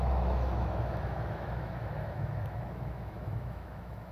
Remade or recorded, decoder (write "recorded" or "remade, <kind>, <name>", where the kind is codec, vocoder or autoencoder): remade, autoencoder, DAC-VAE